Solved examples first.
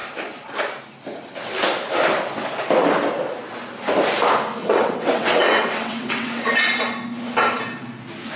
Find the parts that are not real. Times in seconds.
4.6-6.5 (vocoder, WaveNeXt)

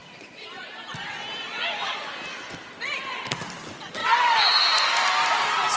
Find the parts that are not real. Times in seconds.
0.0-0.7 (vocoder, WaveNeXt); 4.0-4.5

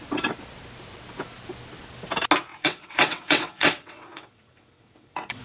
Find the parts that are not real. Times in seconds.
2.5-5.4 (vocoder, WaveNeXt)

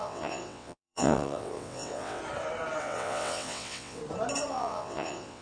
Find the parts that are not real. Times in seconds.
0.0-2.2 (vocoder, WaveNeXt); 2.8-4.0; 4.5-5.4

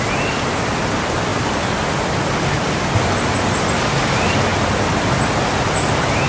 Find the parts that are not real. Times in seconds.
none